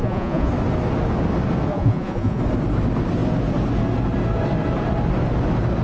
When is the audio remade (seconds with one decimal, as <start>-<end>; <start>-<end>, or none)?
0.0-0.5; 1.7-2.4

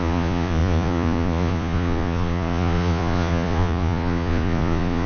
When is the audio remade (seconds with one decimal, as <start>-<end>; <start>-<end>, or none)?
0.0-5.1